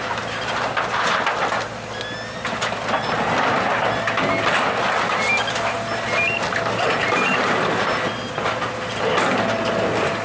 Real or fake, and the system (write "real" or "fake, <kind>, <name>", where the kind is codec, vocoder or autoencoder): real